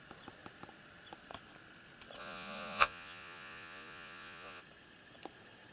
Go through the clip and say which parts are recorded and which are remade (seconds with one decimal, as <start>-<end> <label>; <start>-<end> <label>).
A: 0.0-2.2 recorded; 2.2-4.6 remade; 4.6-5.7 recorded